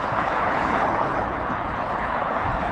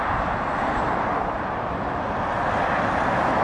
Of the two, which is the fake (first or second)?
first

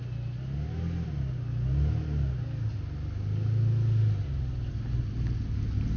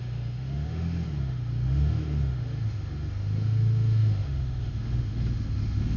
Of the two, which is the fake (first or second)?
second